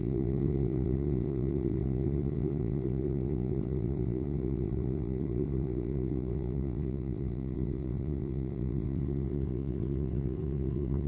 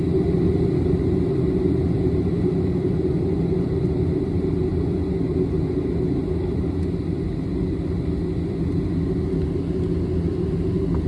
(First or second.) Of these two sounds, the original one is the second